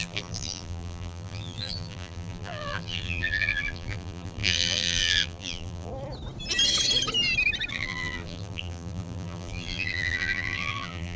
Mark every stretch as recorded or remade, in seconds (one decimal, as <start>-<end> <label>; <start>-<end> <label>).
0.0-5.9 remade; 5.9-7.7 recorded; 7.7-11.2 remade